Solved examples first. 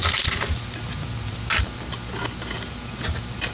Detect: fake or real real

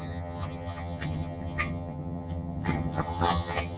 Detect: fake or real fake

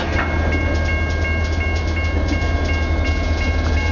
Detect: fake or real real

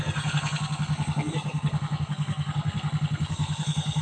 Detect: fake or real fake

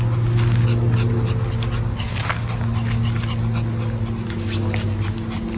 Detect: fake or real real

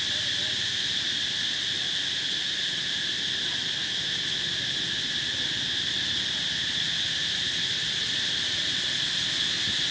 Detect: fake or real real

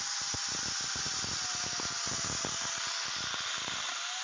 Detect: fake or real real